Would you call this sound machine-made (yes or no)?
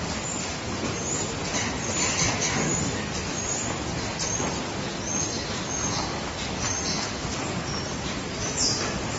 no